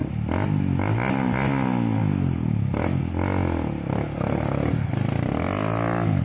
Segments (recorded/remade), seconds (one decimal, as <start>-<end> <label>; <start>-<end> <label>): 0.0-6.2 recorded